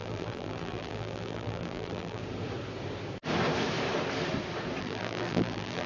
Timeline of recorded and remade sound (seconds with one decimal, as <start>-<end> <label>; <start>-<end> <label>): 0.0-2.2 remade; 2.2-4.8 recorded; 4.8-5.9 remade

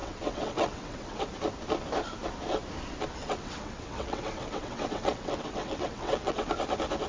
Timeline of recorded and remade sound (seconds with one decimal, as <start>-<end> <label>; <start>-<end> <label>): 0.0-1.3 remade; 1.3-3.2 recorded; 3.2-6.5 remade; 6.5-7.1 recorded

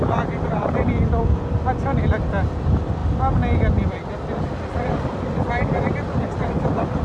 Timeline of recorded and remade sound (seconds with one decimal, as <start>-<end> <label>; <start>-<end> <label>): 0.0-7.0 recorded

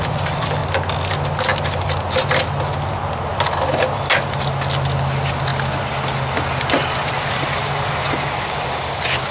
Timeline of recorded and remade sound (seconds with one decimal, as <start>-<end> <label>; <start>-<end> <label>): 0.0-9.3 recorded

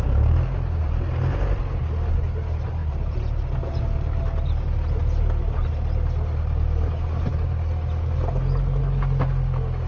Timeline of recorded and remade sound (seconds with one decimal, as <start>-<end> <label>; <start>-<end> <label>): 0.0-9.9 recorded